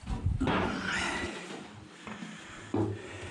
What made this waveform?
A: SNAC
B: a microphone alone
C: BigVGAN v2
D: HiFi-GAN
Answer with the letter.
B